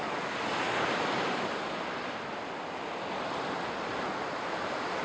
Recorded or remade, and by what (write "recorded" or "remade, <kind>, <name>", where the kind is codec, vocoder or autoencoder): recorded